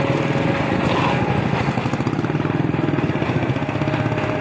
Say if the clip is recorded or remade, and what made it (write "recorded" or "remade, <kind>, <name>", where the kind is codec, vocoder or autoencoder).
recorded